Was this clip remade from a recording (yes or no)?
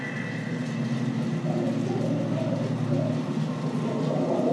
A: no